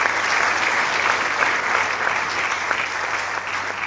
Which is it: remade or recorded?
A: recorded